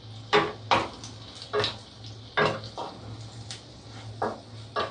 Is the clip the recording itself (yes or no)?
yes